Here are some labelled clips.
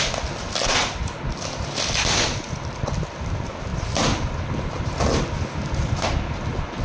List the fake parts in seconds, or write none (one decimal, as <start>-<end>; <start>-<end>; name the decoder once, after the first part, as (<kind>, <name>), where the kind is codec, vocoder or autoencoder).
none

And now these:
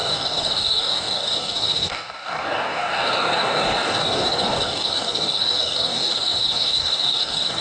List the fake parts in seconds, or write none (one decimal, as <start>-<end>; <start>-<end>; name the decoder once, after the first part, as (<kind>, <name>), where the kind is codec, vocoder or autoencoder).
0.0-7.6 (codec, DAC)

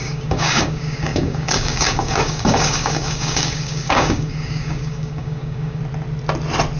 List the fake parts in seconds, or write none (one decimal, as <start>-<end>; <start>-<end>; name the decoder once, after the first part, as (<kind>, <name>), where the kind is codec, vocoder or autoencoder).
0.0-5.8 (codec, DAC)

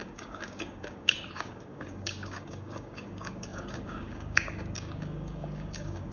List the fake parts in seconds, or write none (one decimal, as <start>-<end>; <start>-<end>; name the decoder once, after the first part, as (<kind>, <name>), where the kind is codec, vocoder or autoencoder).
0.0-6.1 (codec, DAC)

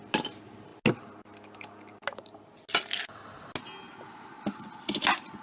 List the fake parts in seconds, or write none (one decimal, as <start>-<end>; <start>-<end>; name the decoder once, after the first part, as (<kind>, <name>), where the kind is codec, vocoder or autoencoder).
none